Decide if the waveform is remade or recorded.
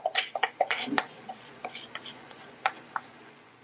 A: remade